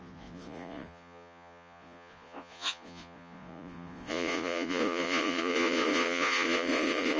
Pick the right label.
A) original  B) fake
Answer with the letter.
B